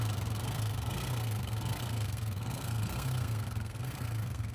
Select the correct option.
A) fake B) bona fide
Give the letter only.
A